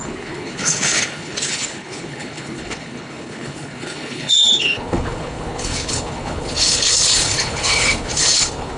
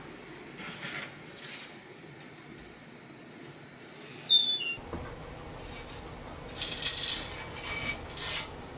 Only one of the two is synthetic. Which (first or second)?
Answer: first